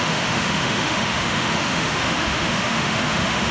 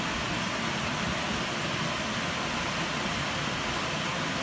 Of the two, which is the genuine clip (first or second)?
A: second